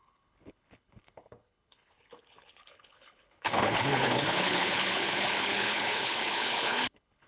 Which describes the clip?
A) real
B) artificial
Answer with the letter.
B